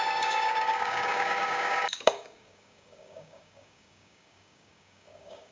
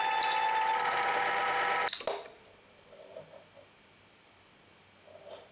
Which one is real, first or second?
second